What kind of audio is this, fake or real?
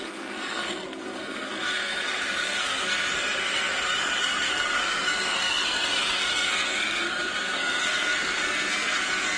fake